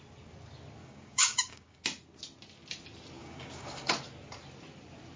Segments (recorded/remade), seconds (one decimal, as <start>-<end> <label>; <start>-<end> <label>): 0.0-0.8 recorded; 0.8-1.8 remade; 1.8-3.2 recorded; 3.2-3.9 remade; 3.9-5.2 recorded